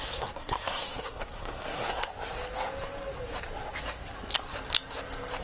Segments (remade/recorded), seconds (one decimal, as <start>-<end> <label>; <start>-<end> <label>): 0.0-2.1 remade; 2.1-5.4 recorded